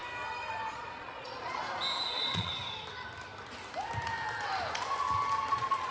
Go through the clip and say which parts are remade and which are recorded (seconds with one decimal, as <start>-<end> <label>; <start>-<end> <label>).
0.0-0.7 recorded; 0.7-1.6 remade; 1.6-2.1 recorded; 2.1-2.5 remade; 2.5-5.5 recorded; 5.5-5.9 remade